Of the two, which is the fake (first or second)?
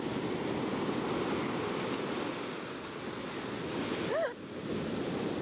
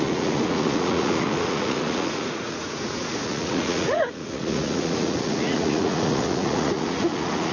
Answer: second